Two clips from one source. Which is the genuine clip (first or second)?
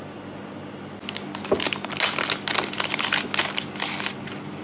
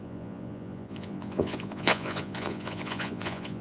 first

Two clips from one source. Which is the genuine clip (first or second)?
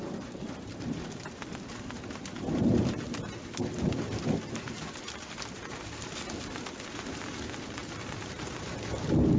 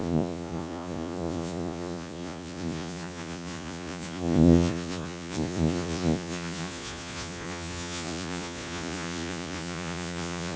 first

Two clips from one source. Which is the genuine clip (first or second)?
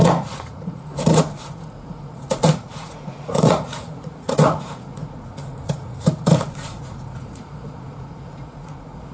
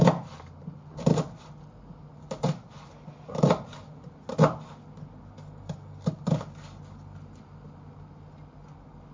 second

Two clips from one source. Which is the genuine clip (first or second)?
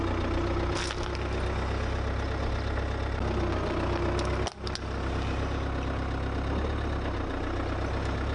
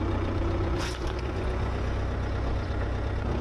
first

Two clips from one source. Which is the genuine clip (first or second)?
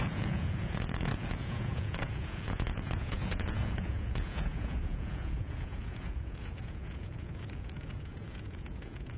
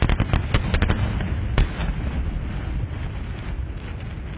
second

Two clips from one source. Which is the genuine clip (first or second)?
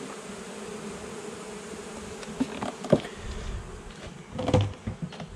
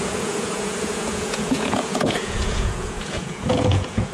first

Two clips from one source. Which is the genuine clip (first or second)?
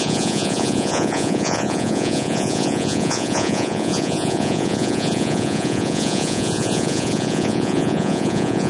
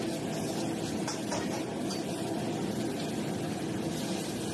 second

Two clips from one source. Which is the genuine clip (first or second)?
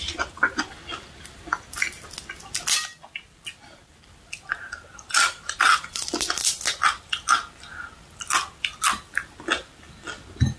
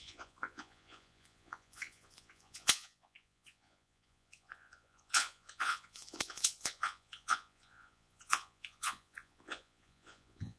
first